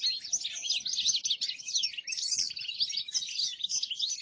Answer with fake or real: real